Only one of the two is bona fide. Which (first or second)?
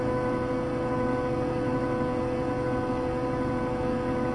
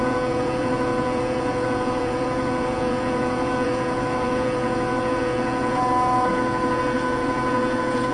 first